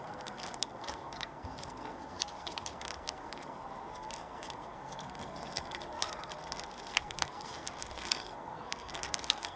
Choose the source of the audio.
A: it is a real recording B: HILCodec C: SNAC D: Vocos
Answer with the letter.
C